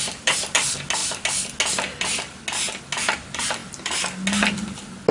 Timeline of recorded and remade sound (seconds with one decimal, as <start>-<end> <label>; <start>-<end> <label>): 0.0-5.1 recorded

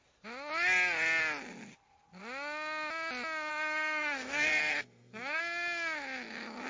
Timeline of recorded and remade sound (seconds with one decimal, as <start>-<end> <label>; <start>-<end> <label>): 0.0-3.5 recorded; 3.5-5.4 remade; 5.4-6.7 recorded

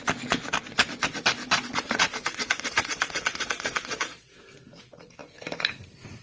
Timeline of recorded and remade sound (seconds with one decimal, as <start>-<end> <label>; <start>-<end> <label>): 0.0-1.4 recorded; 1.4-4.4 remade; 4.4-6.2 recorded

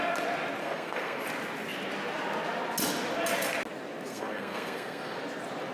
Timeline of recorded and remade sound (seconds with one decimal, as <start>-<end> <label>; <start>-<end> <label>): 0.0-0.6 recorded; 0.6-1.2 remade; 1.2-4.1 recorded; 4.1-5.2 remade; 5.2-5.7 recorded